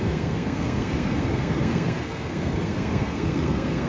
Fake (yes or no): yes